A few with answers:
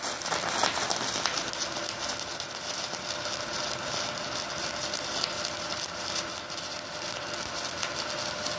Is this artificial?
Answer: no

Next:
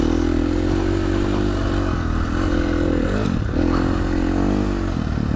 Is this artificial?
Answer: no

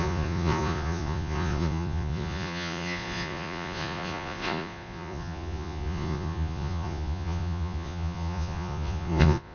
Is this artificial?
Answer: yes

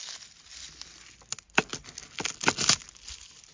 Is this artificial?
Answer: no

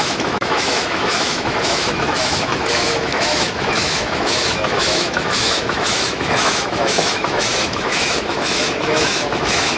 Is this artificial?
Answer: yes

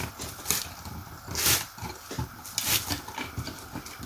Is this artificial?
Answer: no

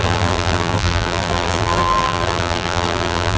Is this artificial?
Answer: yes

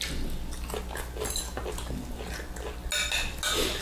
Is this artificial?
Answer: no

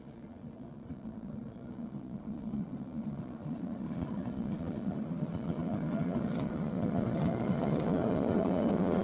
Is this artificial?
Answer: yes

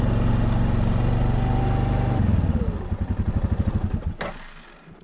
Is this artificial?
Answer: no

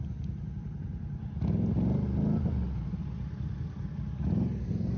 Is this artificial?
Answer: no